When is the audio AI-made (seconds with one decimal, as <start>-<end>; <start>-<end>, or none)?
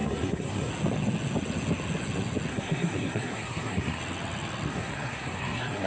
0.0-0.7; 2.5-4.0; 4.7-5.9